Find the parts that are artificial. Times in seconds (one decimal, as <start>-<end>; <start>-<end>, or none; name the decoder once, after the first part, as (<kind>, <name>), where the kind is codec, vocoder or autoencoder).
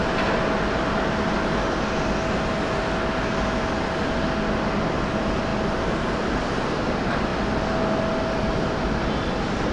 none